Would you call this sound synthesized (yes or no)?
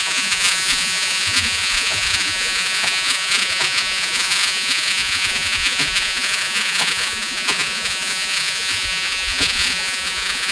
yes